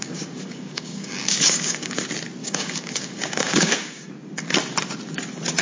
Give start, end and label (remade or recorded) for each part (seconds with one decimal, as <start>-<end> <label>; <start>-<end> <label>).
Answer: 0.0-2.0 remade; 2.0-2.4 recorded; 2.4-4.1 remade; 4.1-5.6 recorded